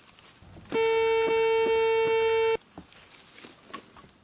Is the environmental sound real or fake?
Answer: real